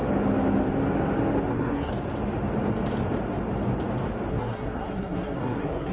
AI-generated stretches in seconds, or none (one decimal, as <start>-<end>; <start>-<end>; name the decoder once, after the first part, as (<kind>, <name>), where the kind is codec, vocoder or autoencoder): 1.5-1.9 (codec, SNAC); 4.3-5.9